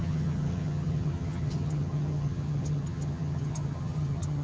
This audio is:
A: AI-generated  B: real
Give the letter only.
A